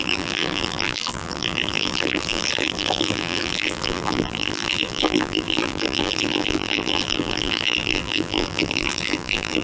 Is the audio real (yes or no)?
no